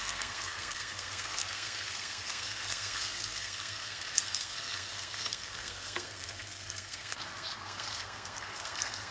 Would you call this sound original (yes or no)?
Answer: no